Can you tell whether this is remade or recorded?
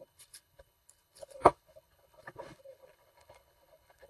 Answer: remade